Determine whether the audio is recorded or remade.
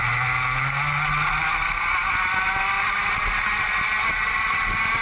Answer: recorded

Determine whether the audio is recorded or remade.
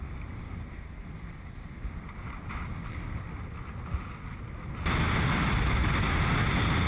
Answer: recorded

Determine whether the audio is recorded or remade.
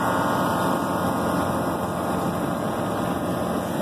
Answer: recorded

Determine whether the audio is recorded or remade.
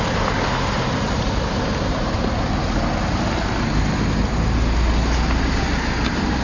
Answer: recorded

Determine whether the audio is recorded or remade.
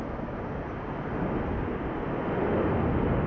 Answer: recorded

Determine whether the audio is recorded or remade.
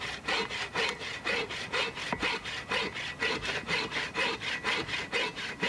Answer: recorded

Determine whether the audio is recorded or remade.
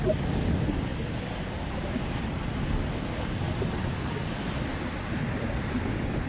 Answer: recorded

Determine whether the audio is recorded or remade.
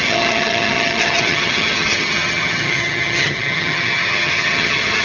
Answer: remade